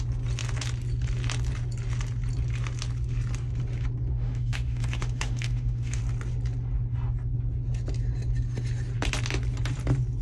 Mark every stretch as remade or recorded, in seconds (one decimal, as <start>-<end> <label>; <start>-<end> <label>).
0.0-4.1 recorded; 4.1-6.0 remade; 6.0-10.2 recorded